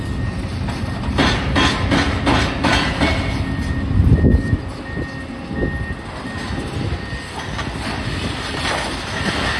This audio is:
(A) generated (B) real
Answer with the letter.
B